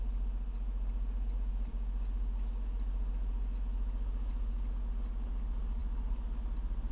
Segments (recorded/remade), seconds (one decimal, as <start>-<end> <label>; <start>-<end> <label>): 0.0-6.9 recorded